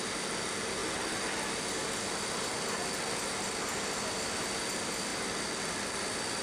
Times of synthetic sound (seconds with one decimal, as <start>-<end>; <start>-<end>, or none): none